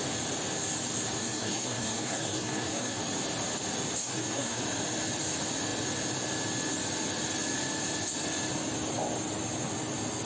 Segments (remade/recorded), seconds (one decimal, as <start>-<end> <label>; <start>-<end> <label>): 0.0-1.2 recorded; 1.2-3.0 remade; 3.0-4.0 recorded; 4.0-4.6 remade; 4.6-10.3 recorded